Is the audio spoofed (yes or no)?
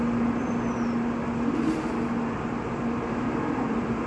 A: no